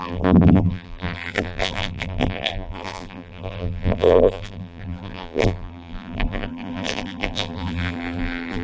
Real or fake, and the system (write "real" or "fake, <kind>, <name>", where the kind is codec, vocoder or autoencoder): fake, vocoder, BigVGAN v2